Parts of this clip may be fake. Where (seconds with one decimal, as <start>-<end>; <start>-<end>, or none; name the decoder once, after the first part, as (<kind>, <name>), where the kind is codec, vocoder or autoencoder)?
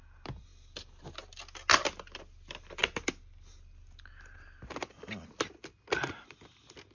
none